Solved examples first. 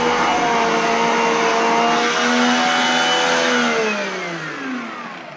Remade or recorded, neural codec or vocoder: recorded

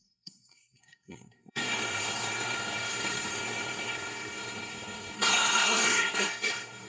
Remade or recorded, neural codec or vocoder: remade, codec, SNAC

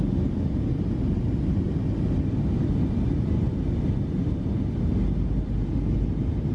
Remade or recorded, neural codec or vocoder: recorded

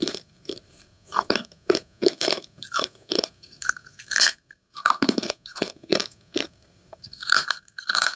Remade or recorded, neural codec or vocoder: remade, codec, SNAC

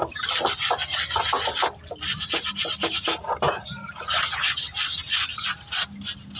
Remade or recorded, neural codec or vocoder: recorded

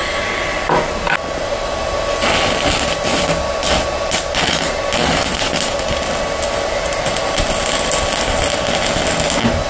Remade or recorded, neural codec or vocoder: recorded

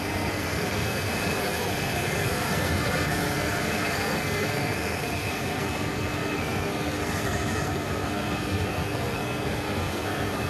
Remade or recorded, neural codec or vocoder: remade, codec, SNAC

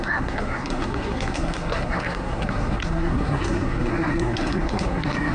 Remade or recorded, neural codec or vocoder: remade, codec, SNAC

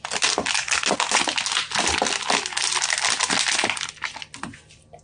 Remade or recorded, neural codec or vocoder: recorded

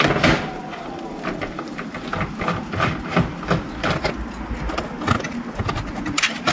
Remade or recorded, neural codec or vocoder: recorded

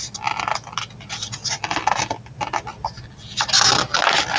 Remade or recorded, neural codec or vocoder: recorded